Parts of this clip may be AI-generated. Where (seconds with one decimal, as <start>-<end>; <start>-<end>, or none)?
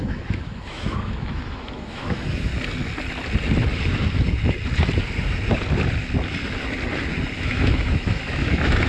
0.0-2.5; 7.4-8.9